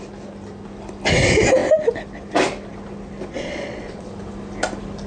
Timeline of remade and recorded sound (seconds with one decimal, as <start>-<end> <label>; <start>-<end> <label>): 0.0-3.3 recorded; 3.3-4.1 remade; 4.1-5.1 recorded